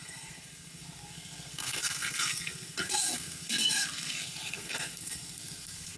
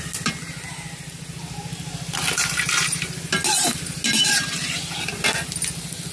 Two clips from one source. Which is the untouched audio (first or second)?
second